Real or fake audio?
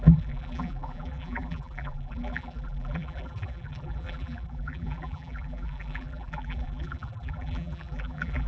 fake